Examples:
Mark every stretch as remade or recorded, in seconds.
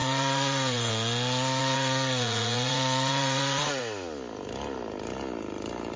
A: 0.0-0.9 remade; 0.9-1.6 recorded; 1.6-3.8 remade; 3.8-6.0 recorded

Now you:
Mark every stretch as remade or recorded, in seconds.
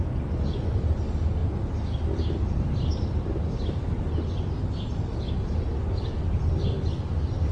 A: 0.0-7.5 recorded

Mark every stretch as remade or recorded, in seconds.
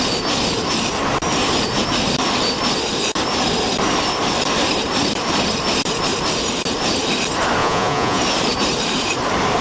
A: 0.0-7.6 recorded; 7.6-8.2 remade; 8.2-9.6 recorded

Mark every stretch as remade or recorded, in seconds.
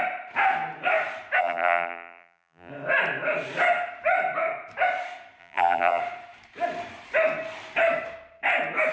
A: 0.0-1.4 recorded; 1.4-2.7 remade; 2.7-5.4 recorded; 5.4-6.0 remade; 6.0-8.9 recorded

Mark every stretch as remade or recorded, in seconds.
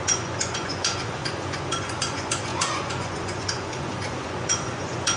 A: 0.0-5.2 remade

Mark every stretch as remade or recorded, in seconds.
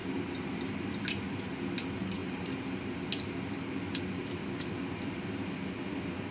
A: 0.0-6.3 recorded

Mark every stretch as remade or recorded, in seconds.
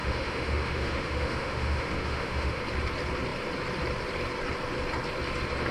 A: 0.0-2.6 remade; 2.6-5.7 recorded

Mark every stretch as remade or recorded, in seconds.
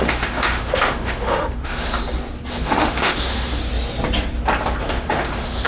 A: 0.0-2.0 remade; 2.0-2.5 recorded; 2.5-3.6 remade; 3.6-4.8 recorded; 4.8-5.7 remade